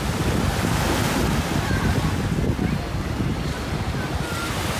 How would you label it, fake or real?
real